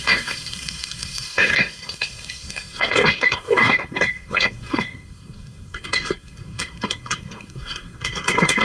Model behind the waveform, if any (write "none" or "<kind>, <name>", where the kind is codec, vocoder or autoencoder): codec, SNAC